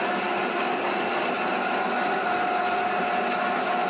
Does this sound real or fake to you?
real